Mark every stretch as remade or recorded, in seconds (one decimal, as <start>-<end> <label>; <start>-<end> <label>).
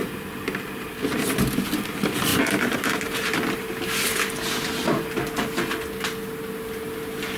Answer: 0.0-2.3 recorded; 2.3-3.7 remade; 3.7-7.4 recorded